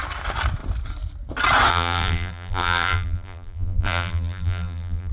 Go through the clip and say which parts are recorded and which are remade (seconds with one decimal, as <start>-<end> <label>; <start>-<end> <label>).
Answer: 0.0-1.7 recorded; 1.7-5.1 remade